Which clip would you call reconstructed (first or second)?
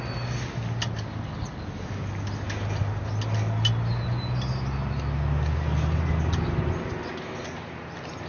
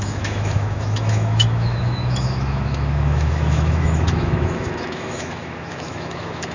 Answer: second